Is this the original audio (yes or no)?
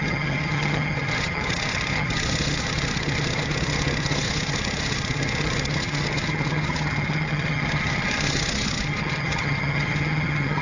no